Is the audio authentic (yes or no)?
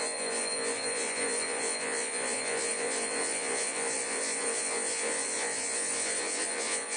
no